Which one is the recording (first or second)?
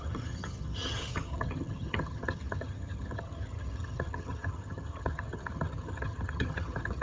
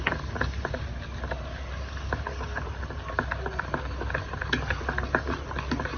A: second